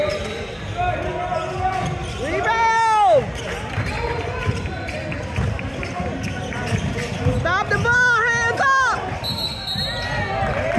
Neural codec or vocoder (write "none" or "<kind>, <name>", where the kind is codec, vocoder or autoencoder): none